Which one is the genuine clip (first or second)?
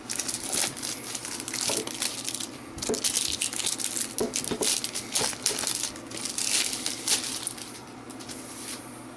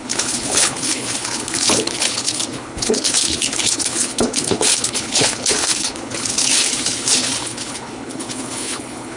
first